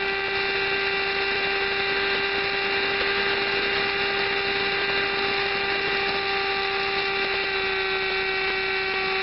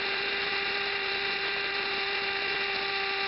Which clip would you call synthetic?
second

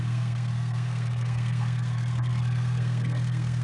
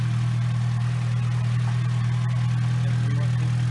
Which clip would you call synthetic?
first